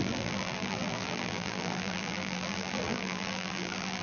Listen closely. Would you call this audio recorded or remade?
remade